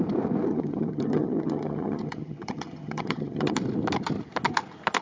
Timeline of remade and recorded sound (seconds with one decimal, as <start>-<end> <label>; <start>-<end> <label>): 0.0-0.5 recorded; 0.5-3.5 remade; 3.5-5.0 recorded